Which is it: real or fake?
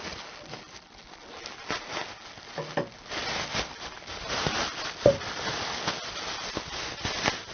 real